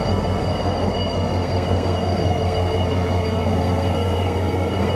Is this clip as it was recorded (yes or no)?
no